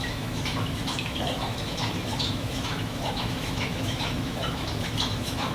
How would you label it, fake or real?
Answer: fake